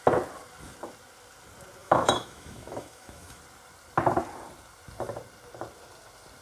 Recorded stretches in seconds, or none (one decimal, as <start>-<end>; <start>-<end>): 0.0-1.8; 3.4-6.4